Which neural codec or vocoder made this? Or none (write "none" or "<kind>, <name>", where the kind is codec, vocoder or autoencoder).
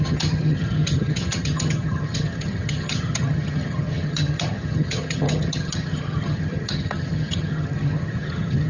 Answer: vocoder, HiFi-GAN